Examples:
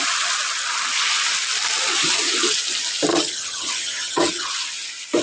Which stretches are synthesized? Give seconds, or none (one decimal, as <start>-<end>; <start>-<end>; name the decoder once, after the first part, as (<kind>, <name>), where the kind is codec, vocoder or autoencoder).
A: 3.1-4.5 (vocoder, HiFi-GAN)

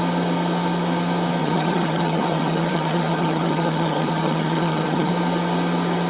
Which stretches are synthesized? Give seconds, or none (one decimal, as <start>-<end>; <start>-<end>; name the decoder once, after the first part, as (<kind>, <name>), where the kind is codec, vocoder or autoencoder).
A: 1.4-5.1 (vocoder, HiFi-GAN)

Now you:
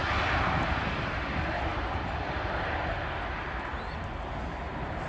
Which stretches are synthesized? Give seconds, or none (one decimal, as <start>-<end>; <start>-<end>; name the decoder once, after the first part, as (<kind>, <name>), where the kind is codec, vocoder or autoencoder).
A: none

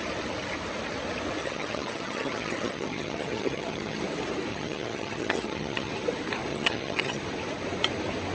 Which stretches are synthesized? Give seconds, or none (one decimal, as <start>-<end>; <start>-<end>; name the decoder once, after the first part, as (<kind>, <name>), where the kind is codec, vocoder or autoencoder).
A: 1.4-4.0 (vocoder, HiFi-GAN); 4.5-5.9; 6.5-7.2

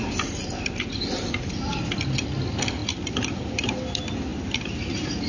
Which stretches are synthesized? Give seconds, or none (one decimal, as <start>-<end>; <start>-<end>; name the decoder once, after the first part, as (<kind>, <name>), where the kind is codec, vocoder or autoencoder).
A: none

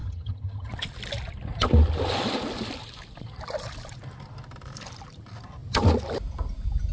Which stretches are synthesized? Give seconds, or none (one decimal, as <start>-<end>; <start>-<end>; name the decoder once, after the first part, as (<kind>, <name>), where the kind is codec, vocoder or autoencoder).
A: 0.0-0.7 (vocoder, HiFi-GAN)